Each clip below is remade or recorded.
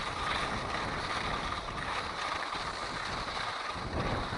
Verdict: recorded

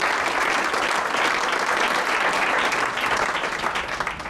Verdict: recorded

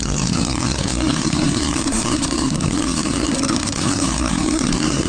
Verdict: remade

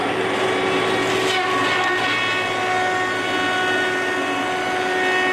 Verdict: recorded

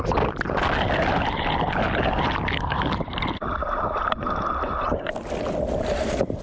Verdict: recorded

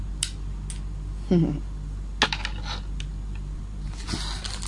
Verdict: recorded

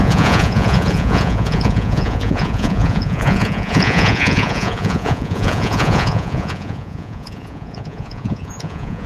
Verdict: remade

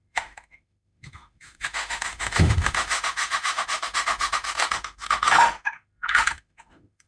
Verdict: remade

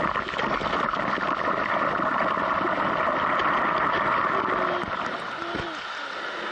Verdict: recorded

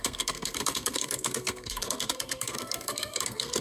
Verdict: remade